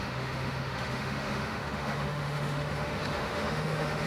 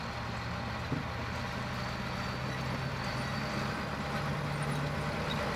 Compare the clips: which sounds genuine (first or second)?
second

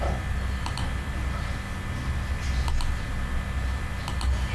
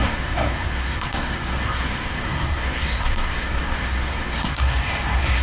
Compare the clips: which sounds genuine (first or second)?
first